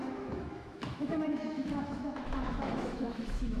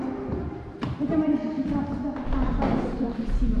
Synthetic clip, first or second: first